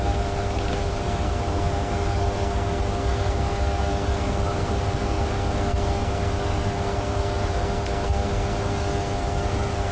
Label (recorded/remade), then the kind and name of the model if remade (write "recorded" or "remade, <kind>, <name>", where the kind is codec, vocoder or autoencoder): remade, codec, SNAC